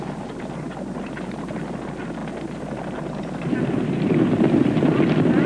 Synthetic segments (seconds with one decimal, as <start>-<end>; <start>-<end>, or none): none